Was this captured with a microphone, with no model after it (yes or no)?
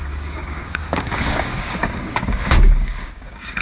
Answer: no